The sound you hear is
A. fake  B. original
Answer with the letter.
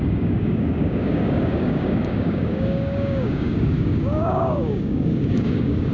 A